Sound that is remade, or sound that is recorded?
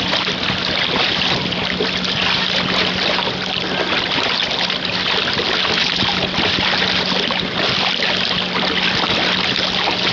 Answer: recorded